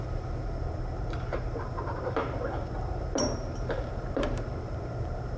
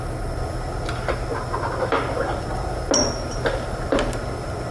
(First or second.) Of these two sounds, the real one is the second